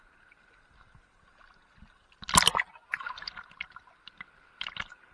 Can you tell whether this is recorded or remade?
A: recorded